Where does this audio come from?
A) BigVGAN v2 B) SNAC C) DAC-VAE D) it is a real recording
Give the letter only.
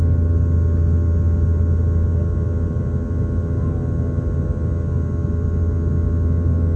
D